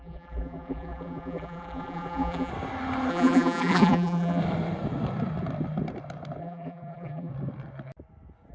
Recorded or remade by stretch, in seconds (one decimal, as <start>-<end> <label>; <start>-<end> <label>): 0.0-2.5 remade; 2.5-3.1 recorded; 3.1-4.4 remade; 4.4-6.4 recorded; 6.4-7.3 remade; 7.3-8.5 recorded